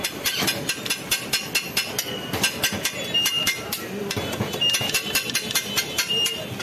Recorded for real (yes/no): yes